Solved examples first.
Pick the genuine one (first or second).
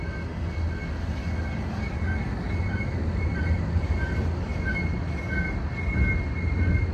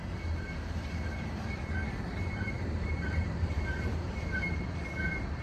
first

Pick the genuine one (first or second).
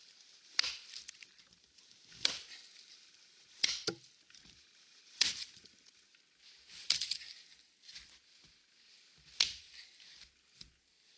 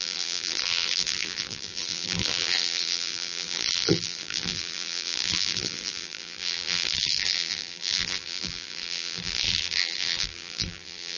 first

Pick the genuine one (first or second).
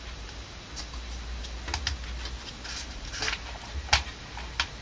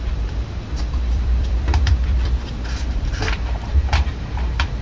first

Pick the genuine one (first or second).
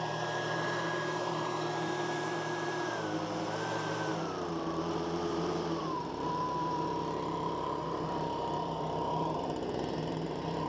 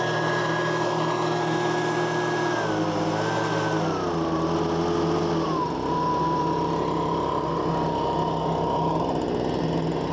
second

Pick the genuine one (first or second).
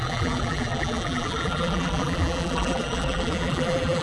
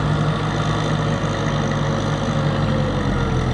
second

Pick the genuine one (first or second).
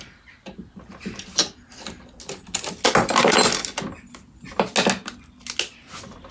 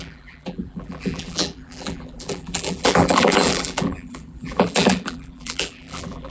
first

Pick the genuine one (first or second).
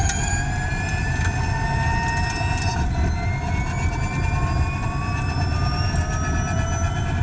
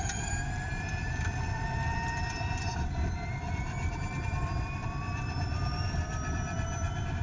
first